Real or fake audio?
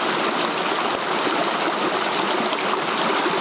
real